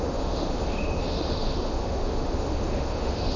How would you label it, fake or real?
fake